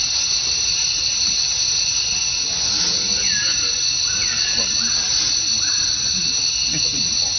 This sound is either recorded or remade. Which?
recorded